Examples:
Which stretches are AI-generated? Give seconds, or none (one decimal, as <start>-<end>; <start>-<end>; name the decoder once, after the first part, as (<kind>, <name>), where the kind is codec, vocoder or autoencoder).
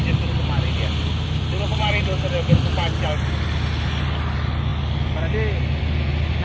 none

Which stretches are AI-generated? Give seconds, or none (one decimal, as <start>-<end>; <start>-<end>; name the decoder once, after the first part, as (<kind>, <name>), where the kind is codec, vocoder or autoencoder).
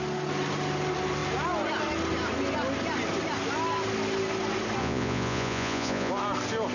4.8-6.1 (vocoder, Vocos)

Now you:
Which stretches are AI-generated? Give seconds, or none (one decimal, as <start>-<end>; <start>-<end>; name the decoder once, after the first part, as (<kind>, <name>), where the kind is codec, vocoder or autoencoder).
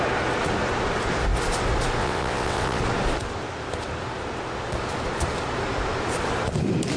2.0-2.8 (vocoder, WaveNeXt)